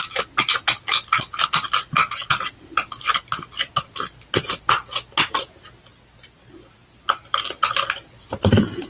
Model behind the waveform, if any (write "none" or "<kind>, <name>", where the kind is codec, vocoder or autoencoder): none